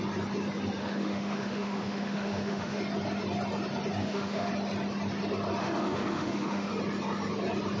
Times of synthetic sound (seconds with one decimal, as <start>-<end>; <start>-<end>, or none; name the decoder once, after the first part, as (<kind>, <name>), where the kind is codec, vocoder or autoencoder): 0.8-2.8 (autoencoder, DAC-VAE); 4.0-4.5; 5.6-6.7